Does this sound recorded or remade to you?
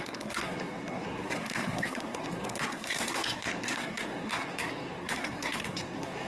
remade